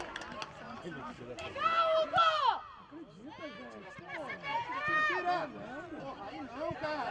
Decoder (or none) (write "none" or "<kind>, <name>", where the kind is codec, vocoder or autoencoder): none